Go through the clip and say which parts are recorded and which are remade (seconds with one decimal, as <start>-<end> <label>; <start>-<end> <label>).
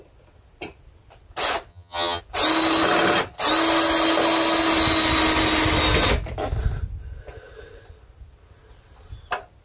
0.0-1.7 recorded; 1.7-2.2 remade; 2.2-9.6 recorded